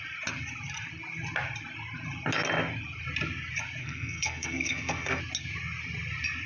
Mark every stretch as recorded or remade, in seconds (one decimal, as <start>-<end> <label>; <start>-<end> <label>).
0.0-3.8 recorded; 3.8-5.2 remade; 5.2-6.5 recorded